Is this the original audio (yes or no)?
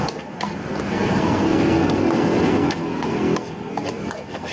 no